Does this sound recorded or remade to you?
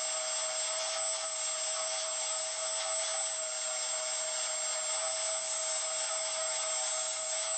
recorded